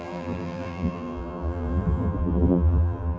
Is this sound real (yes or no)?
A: no